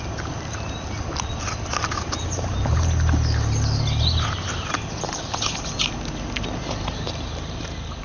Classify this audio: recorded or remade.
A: recorded